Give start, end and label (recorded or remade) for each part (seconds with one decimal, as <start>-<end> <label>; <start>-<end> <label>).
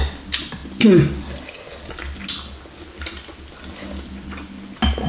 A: 0.0-5.1 recorded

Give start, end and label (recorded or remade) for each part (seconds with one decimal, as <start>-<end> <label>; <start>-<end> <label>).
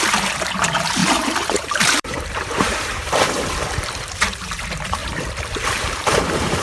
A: 0.0-5.0 remade; 5.0-5.8 recorded; 5.8-6.6 remade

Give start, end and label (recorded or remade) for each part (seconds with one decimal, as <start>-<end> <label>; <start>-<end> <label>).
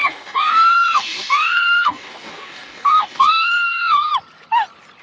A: 0.0-4.1 remade; 4.1-5.0 recorded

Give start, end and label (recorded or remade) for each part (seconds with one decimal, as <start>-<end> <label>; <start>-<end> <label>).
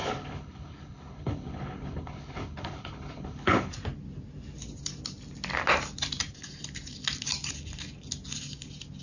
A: 0.0-3.7 remade; 3.7-9.0 recorded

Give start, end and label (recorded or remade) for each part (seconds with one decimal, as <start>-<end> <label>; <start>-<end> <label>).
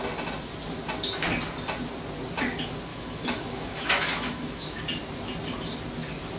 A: 0.0-2.9 recorded; 2.9-4.8 remade; 4.8-6.4 recorded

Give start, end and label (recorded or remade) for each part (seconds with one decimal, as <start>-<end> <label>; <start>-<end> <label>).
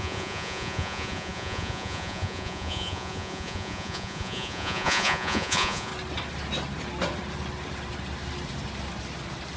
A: 0.0-5.9 remade; 5.9-9.6 recorded